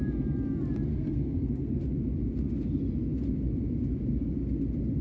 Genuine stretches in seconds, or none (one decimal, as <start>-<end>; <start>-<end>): 0.0-0.9; 1.8-5.0